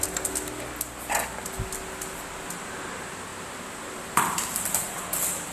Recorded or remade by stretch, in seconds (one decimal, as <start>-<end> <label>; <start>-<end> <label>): 0.0-3.3 recorded; 3.3-5.1 remade; 5.1-5.5 recorded